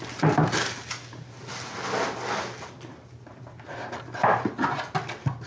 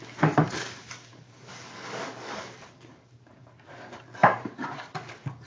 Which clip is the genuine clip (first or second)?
first